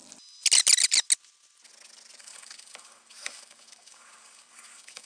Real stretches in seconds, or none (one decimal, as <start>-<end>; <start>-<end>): 0.0-2.2